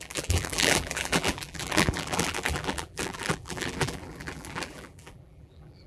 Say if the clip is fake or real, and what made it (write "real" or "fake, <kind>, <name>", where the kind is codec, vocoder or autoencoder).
fake, vocoder, BigVGAN v2